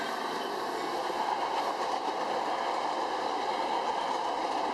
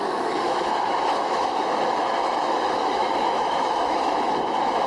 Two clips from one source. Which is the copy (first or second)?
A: second